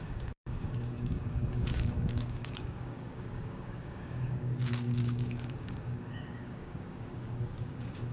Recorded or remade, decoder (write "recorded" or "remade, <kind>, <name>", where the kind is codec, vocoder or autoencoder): remade, codec, DAC